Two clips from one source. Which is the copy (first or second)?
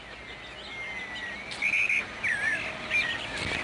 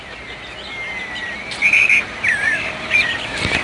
second